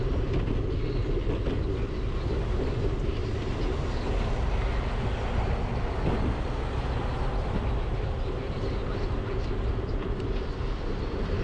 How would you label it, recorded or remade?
recorded